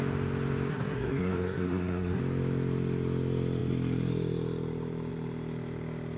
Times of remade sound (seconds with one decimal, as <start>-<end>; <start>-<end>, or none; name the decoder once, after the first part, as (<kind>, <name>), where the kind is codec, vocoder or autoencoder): 0.7-2.2 (codec, SNAC)